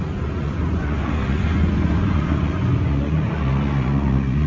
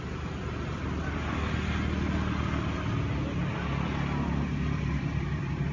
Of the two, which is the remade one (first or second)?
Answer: first